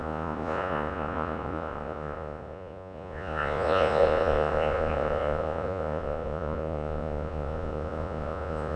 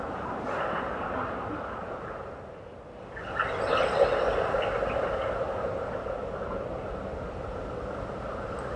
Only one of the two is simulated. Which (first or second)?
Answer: first